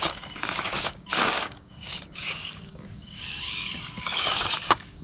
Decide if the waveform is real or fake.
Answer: fake